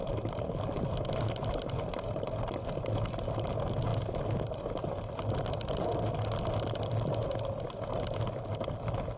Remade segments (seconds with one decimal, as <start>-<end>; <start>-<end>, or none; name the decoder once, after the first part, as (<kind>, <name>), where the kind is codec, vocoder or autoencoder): none